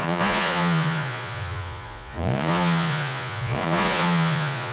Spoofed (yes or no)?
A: yes